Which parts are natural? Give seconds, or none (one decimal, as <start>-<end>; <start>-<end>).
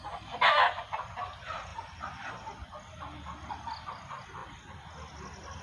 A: 0.0-5.6